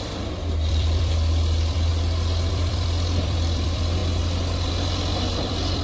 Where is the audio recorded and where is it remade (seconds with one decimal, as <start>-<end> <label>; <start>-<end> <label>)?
0.0-1.9 remade; 1.9-2.5 recorded; 2.5-4.0 remade; 4.0-4.7 recorded; 4.7-5.8 remade